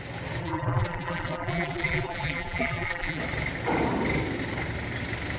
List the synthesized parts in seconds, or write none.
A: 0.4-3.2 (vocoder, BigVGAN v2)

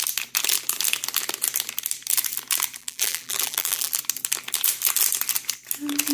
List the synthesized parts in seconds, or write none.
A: 2.8-3.9 (vocoder, BigVGAN v2)

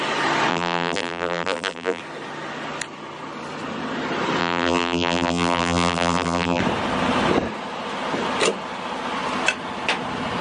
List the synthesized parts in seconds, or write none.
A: 0.5-2.0 (vocoder, BigVGAN v2); 4.4-6.6

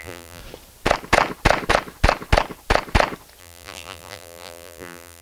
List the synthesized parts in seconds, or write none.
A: 0.0-0.4 (vocoder, BigVGAN v2); 3.4-5.2

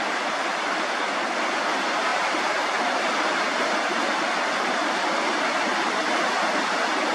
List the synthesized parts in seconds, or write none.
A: 0.0-5.7 (vocoder, BigVGAN v2)

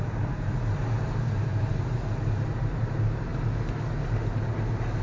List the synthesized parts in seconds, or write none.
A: 0.0-3.3 (vocoder, BigVGAN v2)

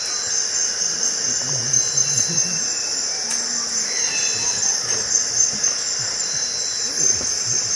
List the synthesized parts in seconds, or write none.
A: 0.6-1.5 (vocoder, BigVGAN v2)